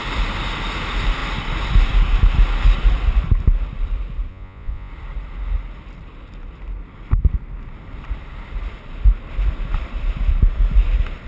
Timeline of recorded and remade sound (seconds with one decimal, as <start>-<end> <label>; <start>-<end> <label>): 0.0-4.3 recorded; 4.3-4.9 remade; 4.9-11.3 recorded

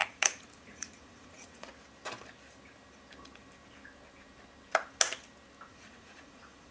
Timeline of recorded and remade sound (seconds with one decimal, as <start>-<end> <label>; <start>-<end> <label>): 0.0-1.7 remade; 1.7-5.7 recorded; 5.7-6.7 remade

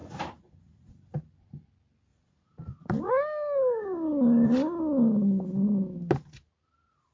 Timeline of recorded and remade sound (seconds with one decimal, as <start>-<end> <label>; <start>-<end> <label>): 0.0-0.9 remade; 0.9-2.1 recorded; 2.1-3.1 remade; 3.1-7.1 recorded